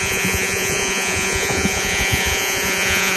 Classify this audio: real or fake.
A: fake